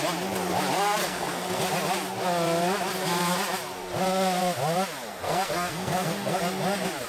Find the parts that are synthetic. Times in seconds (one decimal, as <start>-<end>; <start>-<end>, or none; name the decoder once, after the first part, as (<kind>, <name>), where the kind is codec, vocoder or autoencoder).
1.0-1.6 (codec, SNAC); 5.1-6.4